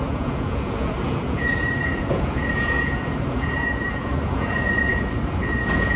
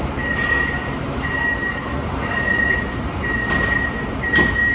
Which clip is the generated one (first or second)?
first